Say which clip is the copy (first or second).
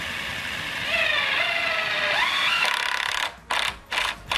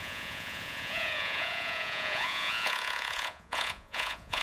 second